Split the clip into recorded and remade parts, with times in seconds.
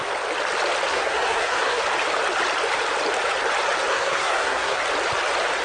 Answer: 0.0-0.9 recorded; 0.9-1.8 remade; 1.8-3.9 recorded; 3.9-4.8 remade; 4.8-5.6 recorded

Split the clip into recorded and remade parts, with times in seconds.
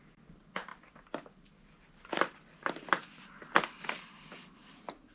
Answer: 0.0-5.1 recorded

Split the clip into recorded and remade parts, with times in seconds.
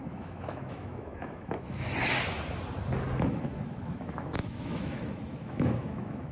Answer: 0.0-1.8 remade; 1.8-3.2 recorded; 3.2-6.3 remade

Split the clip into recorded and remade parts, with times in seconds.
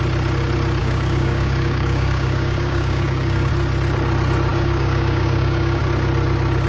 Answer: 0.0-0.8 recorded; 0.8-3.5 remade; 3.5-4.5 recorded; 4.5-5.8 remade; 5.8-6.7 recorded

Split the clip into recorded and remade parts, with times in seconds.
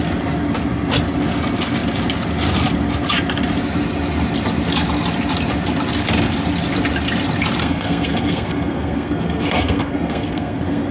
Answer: 0.0-7.6 recorded; 7.6-10.9 remade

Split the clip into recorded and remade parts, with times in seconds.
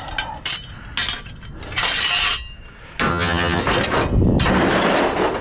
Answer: 0.0-3.1 recorded; 3.1-3.6 remade; 3.6-5.4 recorded